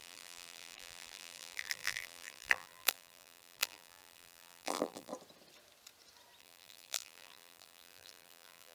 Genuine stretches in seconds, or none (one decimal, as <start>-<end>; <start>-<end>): 5.1-6.4